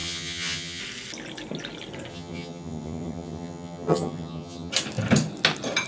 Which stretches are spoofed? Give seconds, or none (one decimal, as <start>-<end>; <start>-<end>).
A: 0.0-0.8; 2.1-4.7